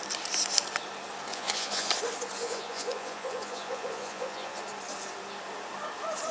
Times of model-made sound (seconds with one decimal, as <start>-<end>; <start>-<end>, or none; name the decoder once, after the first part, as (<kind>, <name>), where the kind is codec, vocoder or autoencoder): 1.3-1.9 (vocoder, Vocos); 2.4-4.6

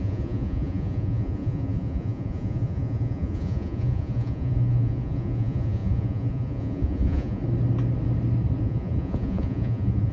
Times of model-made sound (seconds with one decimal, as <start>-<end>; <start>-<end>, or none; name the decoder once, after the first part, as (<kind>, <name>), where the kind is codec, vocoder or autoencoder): 0.0-7.4 (vocoder, Vocos); 8.6-10.1

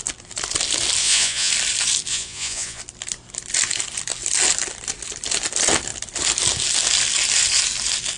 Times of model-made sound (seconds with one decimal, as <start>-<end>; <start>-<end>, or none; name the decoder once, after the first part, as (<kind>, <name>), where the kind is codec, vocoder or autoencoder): 1.0-1.5 (vocoder, Vocos); 2.1-2.8

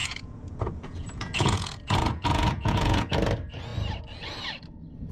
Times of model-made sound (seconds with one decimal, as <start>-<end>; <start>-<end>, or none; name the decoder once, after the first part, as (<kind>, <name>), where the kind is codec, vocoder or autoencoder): 0.0-3.1 (vocoder, Vocos)

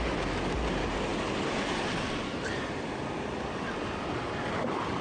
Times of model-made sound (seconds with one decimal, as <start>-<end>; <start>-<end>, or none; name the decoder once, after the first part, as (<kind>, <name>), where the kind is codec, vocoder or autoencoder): none

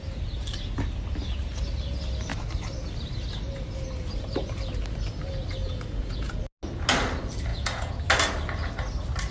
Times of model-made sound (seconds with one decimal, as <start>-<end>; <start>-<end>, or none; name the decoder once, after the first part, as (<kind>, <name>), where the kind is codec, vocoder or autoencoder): 5.6-6.4 (vocoder, Vocos); 7.5-8.0

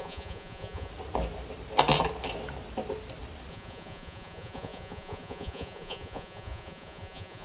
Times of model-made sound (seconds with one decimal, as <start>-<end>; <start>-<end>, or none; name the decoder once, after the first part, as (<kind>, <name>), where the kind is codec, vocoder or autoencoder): 0.0-0.9 (vocoder, Vocos); 3.5-7.4